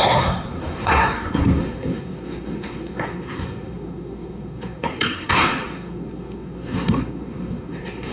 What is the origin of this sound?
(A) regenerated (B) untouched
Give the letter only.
A